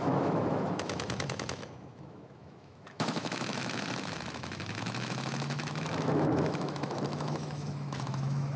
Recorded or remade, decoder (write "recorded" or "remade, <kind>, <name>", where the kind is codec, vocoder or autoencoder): remade, autoencoder, DAC-VAE